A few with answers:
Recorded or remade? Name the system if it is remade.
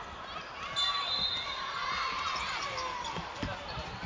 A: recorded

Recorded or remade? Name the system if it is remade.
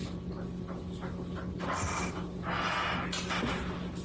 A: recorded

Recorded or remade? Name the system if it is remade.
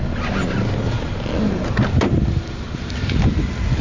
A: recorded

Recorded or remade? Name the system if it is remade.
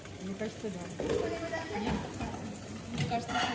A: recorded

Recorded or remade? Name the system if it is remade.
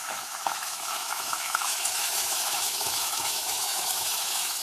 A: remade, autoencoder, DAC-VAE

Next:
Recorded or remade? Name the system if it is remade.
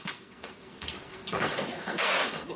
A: remade, codec, SNAC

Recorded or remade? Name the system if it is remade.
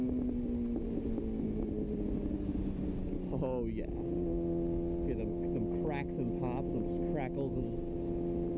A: recorded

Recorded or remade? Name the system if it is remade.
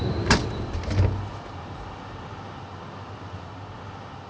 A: recorded